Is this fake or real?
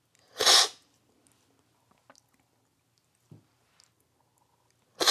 real